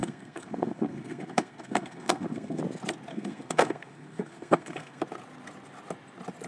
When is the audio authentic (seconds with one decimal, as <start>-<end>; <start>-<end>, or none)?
2.6-3.1; 5.0-6.5